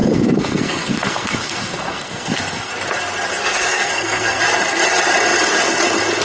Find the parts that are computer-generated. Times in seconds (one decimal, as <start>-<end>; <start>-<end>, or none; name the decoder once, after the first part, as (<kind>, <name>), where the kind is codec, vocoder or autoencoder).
0.0-2.7 (codec, SNAC); 3.3-4.4